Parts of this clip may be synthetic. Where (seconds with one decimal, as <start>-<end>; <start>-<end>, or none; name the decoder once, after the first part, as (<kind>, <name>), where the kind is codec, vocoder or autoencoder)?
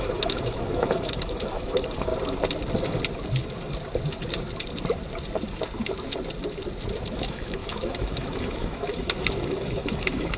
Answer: 0.0-2.1 (autoencoder, DAC-VAE); 7.1-10.4